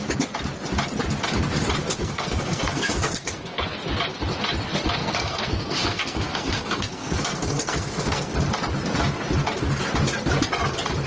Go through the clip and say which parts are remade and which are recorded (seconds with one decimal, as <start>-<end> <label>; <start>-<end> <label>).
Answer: 0.0-2.0 recorded; 2.0-3.7 remade; 3.7-5.0 recorded; 5.0-8.3 remade; 8.3-11.1 recorded